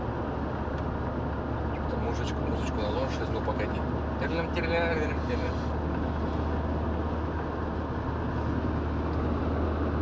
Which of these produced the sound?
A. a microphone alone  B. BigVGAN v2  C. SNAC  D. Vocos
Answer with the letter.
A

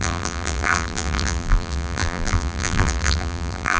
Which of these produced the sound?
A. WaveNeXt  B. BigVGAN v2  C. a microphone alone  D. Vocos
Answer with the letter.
B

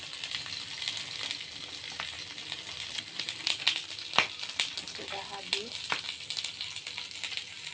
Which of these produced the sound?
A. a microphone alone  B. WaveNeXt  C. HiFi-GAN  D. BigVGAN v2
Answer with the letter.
A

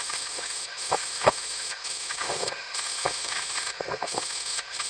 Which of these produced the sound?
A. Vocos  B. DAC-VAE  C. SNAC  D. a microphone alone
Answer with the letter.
B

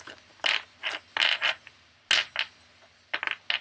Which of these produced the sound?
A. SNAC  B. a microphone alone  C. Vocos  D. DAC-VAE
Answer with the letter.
B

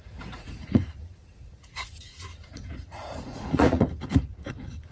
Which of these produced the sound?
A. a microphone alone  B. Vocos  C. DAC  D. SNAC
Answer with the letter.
B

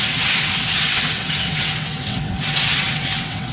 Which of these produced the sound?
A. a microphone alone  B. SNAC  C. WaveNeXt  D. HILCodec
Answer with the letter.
C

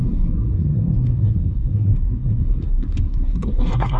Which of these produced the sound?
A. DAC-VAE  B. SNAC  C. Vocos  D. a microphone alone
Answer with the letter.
B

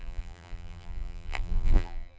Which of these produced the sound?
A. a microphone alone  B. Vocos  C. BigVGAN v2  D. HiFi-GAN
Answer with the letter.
C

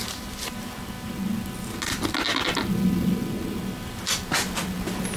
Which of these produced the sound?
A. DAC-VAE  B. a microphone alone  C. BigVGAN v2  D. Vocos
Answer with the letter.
B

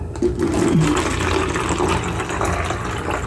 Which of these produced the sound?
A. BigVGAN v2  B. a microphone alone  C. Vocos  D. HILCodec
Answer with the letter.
B